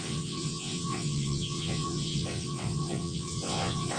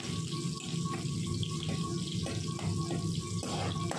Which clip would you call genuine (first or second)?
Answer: second